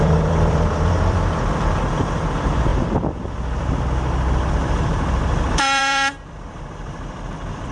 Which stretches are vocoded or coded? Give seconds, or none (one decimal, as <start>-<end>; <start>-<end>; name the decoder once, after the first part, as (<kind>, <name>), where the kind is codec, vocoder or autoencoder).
0.0-2.7 (vocoder, BigVGAN v2); 4.5-7.7